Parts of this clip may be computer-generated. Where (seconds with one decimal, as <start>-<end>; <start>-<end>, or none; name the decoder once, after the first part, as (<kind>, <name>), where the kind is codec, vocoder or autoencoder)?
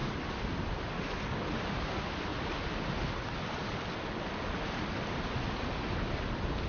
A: none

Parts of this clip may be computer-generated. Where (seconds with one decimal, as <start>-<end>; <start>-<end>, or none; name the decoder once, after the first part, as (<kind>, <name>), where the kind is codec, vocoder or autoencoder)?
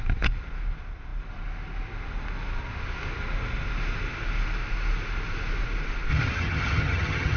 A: 6.1-7.4 (vocoder, HiFi-GAN)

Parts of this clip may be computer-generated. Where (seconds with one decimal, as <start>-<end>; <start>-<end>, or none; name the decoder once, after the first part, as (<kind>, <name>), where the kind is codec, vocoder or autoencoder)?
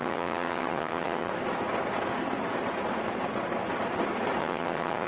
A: 0.0-1.3 (vocoder, HiFi-GAN); 4.4-5.1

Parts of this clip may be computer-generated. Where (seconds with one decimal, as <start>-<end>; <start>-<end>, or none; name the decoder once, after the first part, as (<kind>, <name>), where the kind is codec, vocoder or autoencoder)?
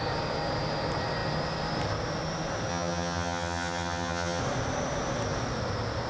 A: 2.7-4.4 (vocoder, HiFi-GAN)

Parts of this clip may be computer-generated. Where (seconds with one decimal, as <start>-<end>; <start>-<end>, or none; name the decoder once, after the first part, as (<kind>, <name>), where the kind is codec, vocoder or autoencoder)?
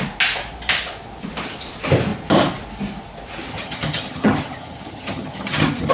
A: 3.5-5.9 (vocoder, HiFi-GAN)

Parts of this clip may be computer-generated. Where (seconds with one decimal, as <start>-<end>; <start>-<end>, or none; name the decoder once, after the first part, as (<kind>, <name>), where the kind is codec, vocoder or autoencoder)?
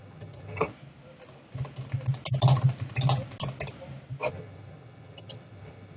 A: 0.0-0.7 (vocoder, HiFi-GAN); 4.3-6.0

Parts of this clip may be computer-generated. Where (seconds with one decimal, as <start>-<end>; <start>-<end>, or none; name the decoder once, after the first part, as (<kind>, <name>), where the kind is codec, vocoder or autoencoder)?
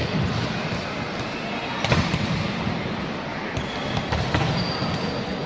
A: none